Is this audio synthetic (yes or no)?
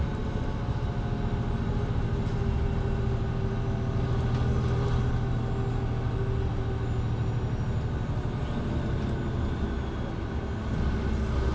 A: no